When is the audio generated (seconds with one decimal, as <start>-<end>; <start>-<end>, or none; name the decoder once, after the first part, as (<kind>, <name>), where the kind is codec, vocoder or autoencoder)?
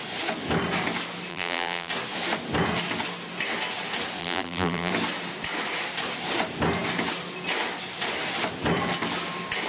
1.3-1.9 (vocoder, BigVGAN v2); 4.2-4.9